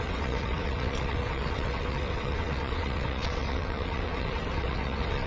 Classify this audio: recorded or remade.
remade